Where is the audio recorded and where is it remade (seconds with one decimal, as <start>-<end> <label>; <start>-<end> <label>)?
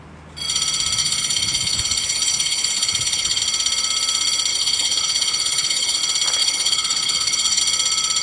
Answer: 0.0-1.0 recorded; 1.0-3.4 remade; 3.4-4.5 recorded; 4.5-6.0 remade; 6.0-6.4 recorded; 6.4-7.6 remade; 7.6-8.2 recorded